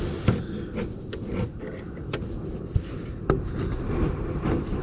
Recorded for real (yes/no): yes